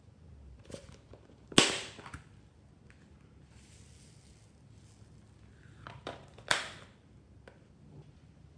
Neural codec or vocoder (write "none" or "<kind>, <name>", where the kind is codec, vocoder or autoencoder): none